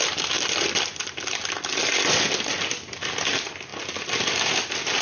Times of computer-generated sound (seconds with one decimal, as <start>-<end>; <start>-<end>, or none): none